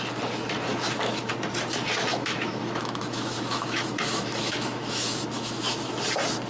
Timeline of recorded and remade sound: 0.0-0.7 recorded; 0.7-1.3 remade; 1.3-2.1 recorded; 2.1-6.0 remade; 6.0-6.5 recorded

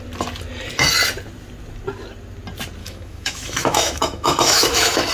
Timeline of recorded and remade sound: 0.0-2.8 recorded; 2.8-5.1 remade